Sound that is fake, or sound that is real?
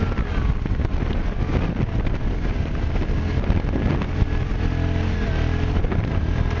real